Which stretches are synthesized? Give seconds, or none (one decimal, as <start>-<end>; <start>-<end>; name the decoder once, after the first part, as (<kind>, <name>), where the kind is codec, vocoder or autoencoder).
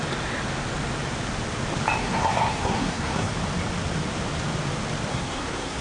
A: 2.0-3.3 (codec, SNAC); 5.1-5.8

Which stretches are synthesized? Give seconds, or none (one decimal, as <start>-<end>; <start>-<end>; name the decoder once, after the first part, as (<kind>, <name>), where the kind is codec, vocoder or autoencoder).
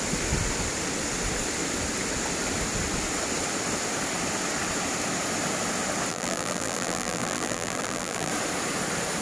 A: 6.1-8.3 (vocoder, BigVGAN v2)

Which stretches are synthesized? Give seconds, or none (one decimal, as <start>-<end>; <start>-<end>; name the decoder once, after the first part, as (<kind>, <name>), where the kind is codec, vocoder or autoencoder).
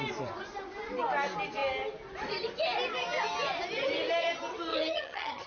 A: 4.7-5.5 (vocoder, HiFi-GAN)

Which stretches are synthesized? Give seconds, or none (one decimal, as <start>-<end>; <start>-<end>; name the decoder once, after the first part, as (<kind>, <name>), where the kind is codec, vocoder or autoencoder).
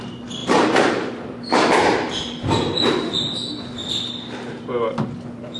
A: 0.4-2.1 (vocoder, BigVGAN v2); 3.8-4.6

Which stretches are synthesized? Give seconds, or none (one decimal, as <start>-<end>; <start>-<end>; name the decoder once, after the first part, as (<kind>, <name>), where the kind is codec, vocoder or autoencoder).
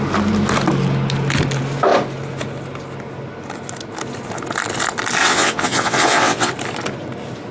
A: 5.2-6.5 (vocoder, WaveNeXt)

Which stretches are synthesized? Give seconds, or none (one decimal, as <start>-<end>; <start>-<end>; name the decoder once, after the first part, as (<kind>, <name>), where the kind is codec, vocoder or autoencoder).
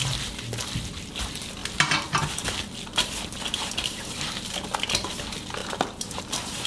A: 5.6-6.2 (vocoder, BigVGAN v2)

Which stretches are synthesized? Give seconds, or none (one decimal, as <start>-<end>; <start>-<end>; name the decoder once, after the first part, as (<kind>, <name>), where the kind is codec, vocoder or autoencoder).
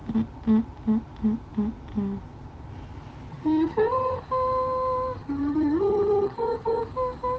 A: 3.3-4.2 (vocoder, HiFi-GAN); 5.2-6.8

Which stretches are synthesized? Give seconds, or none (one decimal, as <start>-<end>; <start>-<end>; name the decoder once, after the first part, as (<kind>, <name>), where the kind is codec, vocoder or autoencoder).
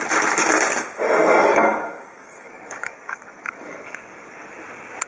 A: 1.4-4.5 (codec, DAC)